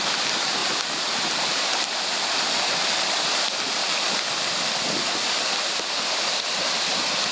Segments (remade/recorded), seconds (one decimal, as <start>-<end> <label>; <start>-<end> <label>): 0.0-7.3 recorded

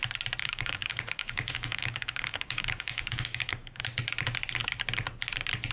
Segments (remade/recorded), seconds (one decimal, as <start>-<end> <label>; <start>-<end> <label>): 0.0-0.4 recorded; 0.4-3.8 remade; 3.8-5.7 recorded

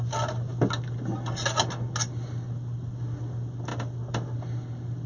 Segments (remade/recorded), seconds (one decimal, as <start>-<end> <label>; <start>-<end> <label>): 0.0-5.1 recorded

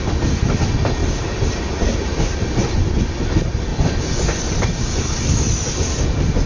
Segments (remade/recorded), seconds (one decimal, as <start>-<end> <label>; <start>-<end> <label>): 0.0-2.6 recorded; 2.6-3.2 remade; 3.2-3.7 recorded; 3.7-4.6 remade; 4.6-6.5 recorded

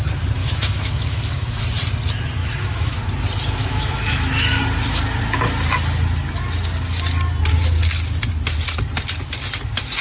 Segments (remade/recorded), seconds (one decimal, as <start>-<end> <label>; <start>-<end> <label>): 0.0-0.4 recorded; 0.4-1.6 remade; 1.6-2.4 recorded; 2.4-3.0 remade; 3.0-3.6 recorded; 3.6-4.6 remade; 4.6-10.0 recorded